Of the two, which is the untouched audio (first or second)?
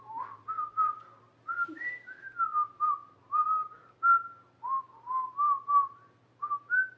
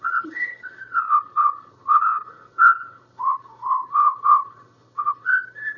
first